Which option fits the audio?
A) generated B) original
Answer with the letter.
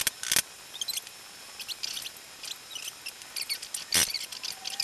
B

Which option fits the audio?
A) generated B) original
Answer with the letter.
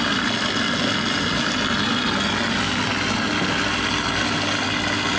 B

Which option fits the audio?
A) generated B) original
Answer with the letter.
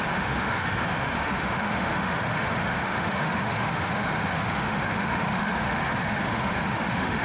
A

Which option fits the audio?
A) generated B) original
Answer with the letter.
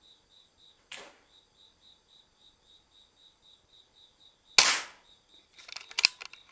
B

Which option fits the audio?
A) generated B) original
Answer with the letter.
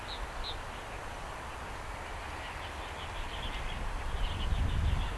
B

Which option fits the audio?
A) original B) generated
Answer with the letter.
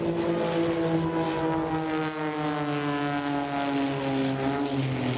A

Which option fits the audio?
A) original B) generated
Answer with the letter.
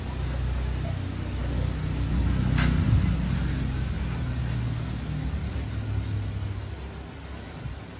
A